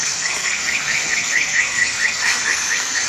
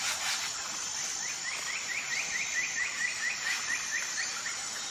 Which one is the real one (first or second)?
second